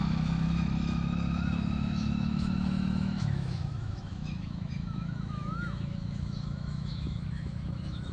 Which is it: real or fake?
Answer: fake